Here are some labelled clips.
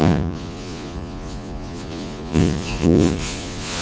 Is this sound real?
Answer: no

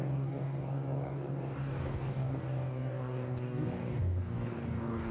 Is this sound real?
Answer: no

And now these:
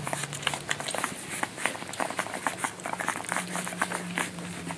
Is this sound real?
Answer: yes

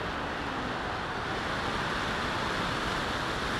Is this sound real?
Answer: yes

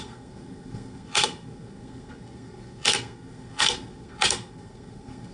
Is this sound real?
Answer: no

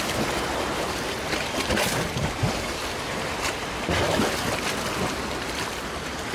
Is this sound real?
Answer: yes